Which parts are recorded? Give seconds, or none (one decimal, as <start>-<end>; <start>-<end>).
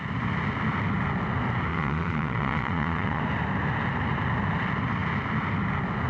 0.0-1.7; 3.2-6.1